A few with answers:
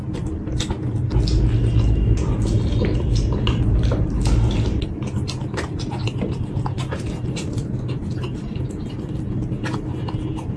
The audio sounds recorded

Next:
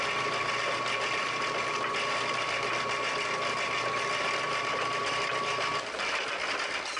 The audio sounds recorded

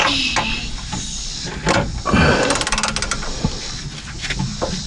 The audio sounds recorded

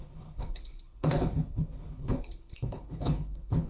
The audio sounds remade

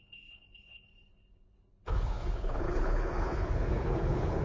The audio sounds remade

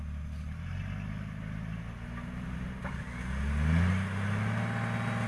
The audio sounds recorded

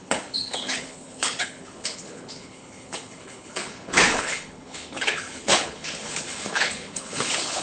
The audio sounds remade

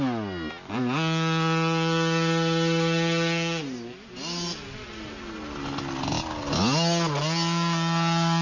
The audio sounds recorded